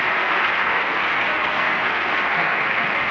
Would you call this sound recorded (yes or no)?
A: no